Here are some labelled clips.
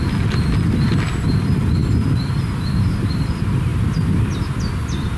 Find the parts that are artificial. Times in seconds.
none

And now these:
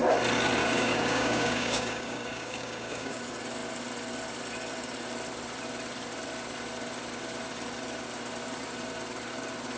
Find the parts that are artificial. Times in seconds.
0.6-3.2